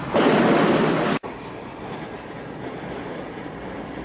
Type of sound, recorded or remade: recorded